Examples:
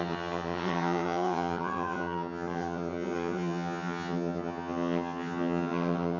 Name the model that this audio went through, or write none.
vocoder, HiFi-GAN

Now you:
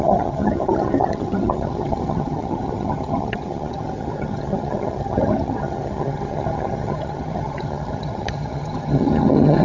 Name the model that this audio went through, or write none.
vocoder, HiFi-GAN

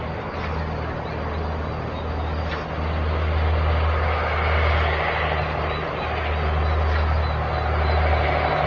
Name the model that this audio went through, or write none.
none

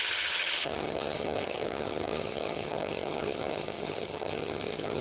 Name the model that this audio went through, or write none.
vocoder, HiFi-GAN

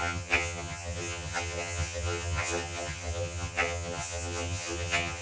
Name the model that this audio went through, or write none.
vocoder, HiFi-GAN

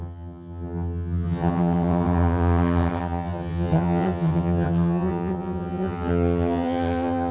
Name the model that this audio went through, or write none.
vocoder, HiFi-GAN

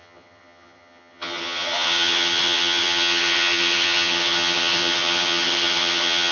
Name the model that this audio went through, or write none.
vocoder, HiFi-GAN